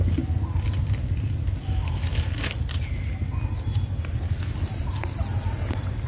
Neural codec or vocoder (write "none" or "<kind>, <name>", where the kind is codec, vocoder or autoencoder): none